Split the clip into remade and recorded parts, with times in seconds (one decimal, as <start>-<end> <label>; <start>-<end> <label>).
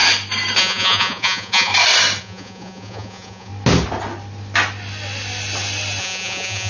0.0-0.6 recorded; 0.6-1.7 remade; 1.7-2.2 recorded; 2.2-3.5 remade; 3.5-6.0 recorded; 6.0-6.7 remade